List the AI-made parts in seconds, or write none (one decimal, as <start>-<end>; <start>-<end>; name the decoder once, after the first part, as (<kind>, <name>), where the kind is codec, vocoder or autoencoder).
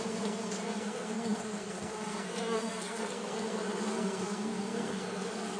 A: 0.0-5.6 (codec, SNAC)